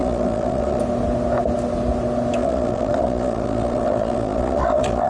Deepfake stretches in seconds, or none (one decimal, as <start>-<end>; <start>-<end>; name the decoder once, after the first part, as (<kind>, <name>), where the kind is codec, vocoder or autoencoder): 0.0-0.8 (vocoder, Vocos); 2.4-5.1